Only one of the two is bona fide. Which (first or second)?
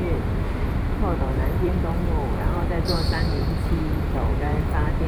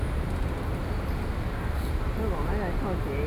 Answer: second